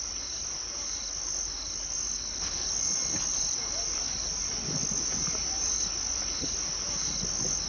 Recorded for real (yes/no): yes